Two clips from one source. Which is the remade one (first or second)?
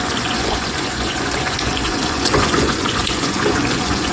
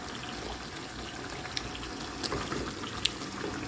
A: first